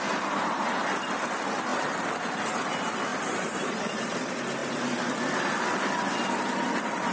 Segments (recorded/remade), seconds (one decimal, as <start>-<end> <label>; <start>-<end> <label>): 0.0-1.7 recorded; 1.7-2.4 remade; 2.4-3.1 recorded; 3.1-3.9 remade; 3.9-4.6 recorded; 4.6-6.3 remade; 6.3-7.1 recorded